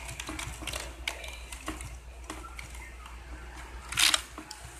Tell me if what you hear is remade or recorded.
recorded